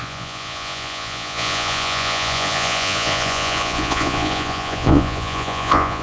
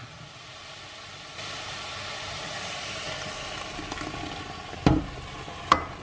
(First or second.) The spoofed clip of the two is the first